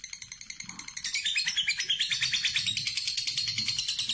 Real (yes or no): yes